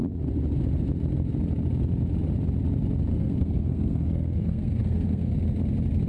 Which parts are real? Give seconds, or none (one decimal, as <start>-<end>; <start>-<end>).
0.0-3.1; 5.3-6.1